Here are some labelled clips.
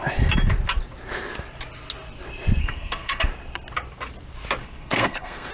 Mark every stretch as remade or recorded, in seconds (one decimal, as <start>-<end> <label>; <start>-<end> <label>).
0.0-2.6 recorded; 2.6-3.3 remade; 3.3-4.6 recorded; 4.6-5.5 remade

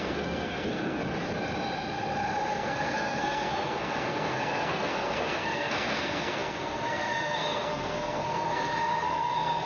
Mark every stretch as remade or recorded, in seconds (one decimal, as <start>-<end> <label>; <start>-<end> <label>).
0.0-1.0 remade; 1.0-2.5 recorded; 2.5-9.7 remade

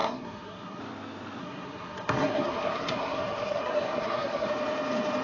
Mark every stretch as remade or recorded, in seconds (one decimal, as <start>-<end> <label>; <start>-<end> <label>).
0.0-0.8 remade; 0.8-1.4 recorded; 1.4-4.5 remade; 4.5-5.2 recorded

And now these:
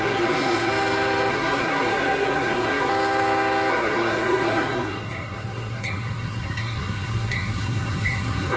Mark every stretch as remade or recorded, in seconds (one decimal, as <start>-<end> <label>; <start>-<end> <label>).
0.0-0.7 remade; 0.7-1.3 recorded; 1.3-2.9 remade; 2.9-3.7 recorded; 3.7-8.6 remade